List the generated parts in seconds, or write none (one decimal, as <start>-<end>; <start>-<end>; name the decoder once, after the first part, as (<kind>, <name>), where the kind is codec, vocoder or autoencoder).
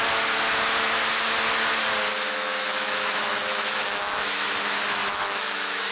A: 2.1-5.9 (autoencoder, DAC-VAE)